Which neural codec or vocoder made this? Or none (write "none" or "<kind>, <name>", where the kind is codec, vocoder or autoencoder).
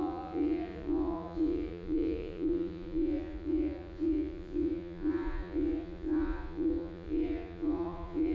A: vocoder, Vocos